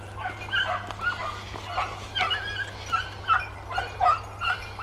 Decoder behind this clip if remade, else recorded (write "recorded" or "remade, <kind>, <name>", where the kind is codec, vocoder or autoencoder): recorded